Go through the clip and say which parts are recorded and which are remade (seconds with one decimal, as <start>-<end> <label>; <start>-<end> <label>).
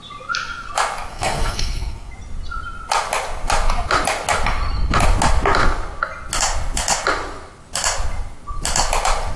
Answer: 0.0-1.1 recorded; 1.1-2.1 remade; 2.1-9.4 recorded